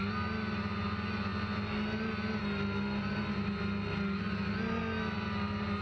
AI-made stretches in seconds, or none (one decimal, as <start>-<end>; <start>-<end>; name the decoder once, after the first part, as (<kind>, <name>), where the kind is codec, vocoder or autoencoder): none